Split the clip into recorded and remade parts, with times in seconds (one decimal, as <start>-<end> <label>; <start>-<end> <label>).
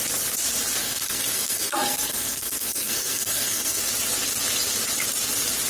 0.0-0.8 recorded; 0.8-3.8 remade; 3.8-5.7 recorded